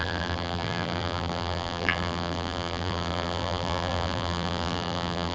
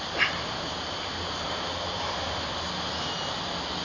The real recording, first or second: second